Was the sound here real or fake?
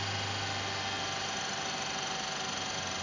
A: real